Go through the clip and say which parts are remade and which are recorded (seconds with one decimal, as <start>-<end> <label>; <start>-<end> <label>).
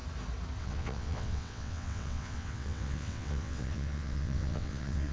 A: 0.0-0.6 recorded; 0.6-5.1 remade